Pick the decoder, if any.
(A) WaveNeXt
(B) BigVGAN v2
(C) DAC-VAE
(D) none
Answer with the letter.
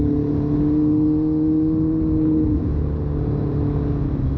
D